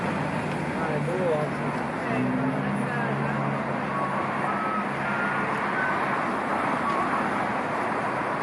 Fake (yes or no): no